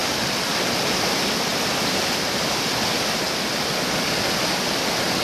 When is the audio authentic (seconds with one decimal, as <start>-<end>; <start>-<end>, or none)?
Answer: 0.0-5.2